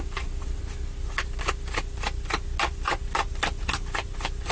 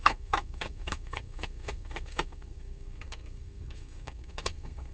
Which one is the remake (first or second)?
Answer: second